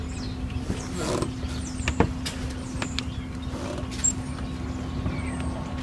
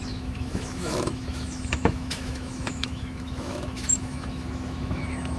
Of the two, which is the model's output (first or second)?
second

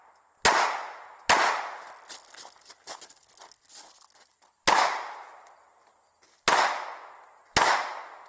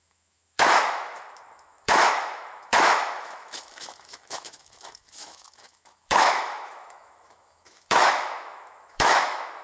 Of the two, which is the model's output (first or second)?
second